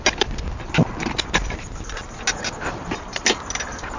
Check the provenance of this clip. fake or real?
real